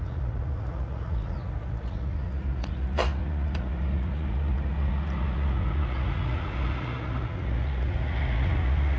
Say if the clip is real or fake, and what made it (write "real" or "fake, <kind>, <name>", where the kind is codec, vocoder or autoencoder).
fake, vocoder, Vocos